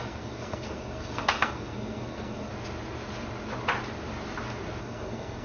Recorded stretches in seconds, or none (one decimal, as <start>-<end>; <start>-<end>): 2.5-4.8

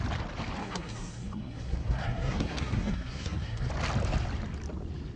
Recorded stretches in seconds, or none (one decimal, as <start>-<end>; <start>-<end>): 0.0-0.6; 3.7-5.2

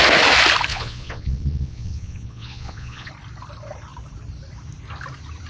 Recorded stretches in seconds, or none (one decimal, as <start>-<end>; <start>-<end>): 0.0-0.7; 3.1-5.5

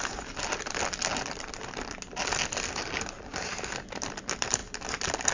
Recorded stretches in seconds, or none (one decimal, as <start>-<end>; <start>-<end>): 0.0-5.3

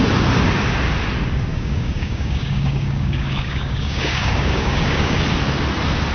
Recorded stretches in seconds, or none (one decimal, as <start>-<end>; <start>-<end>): 0.0-1.5; 5.2-6.1

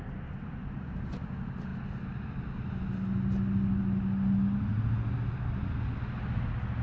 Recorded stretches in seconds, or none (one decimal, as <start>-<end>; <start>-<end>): 0.0-6.8

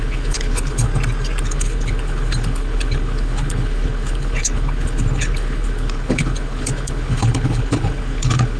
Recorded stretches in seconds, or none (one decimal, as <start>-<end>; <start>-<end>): 0.9-1.4